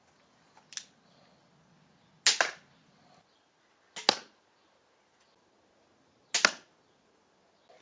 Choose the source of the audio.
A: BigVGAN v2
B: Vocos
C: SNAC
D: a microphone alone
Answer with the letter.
D